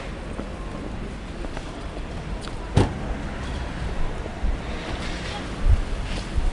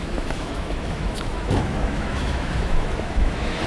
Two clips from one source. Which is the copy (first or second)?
second